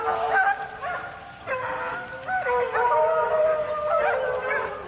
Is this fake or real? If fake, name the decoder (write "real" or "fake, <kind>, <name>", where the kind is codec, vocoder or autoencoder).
real